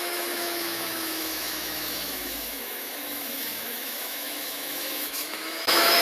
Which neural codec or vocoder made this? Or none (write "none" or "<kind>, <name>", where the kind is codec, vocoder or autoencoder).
autoencoder, DAC-VAE